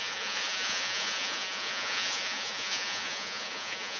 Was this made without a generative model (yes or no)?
no